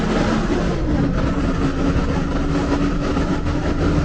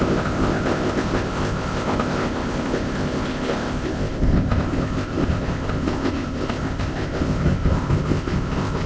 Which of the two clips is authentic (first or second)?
first